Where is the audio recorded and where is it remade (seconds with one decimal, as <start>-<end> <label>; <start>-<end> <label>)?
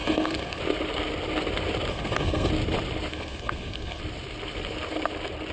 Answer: 0.0-0.6 remade; 0.6-1.9 recorded; 1.9-2.5 remade; 2.5-3.1 recorded; 3.1-4.0 remade; 4.0-5.5 recorded